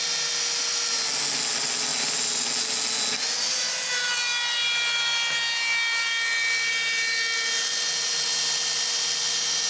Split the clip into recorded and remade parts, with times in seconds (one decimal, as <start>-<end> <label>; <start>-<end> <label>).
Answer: 0.0-9.7 recorded